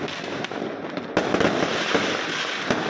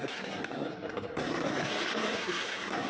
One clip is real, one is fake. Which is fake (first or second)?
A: second